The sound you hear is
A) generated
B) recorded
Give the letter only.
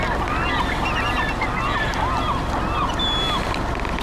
B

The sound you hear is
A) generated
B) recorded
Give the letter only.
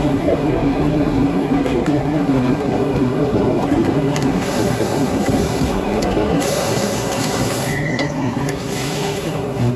A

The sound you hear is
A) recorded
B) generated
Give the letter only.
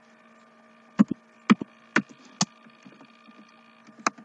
A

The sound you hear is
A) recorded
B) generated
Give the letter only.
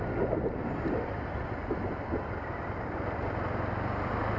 A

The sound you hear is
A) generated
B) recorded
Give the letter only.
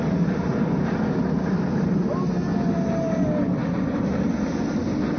B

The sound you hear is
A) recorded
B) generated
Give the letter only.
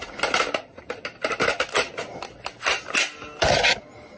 A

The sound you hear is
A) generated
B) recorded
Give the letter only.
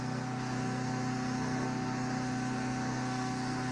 A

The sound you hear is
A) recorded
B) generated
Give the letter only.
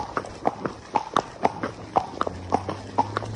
A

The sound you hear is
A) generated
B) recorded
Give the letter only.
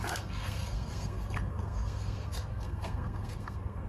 A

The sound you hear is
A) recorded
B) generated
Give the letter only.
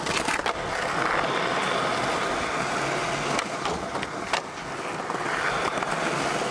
A